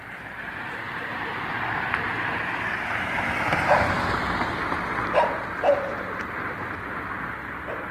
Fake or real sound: fake